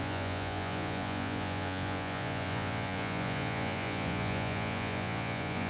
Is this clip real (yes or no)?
no